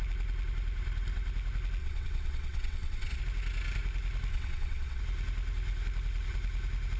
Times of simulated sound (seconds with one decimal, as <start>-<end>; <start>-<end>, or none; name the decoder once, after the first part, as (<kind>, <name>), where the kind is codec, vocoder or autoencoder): 1.8-3.2 (vocoder, WaveNeXt); 4.3-5.0